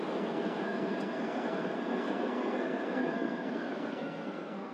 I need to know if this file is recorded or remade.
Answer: remade